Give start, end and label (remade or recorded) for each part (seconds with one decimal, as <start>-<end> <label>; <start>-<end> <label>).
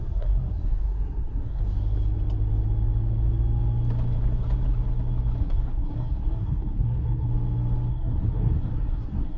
0.0-1.6 remade; 1.6-5.4 recorded; 5.4-7.3 remade; 7.3-7.9 recorded; 7.9-9.4 remade